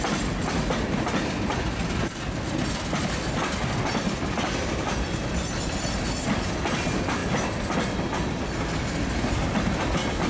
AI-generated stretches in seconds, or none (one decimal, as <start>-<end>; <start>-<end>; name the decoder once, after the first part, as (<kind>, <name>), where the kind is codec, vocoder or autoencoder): none